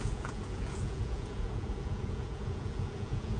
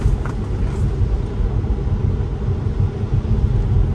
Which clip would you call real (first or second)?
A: second